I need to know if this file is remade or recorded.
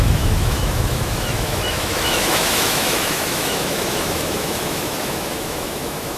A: remade